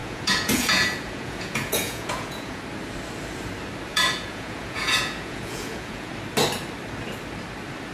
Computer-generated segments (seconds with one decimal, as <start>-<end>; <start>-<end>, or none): 0.0-2.6; 3.9-6.1